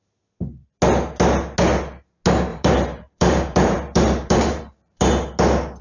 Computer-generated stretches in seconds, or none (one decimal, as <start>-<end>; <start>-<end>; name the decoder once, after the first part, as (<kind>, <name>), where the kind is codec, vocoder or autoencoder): 2.5-5.1 (vocoder, BigVGAN v2)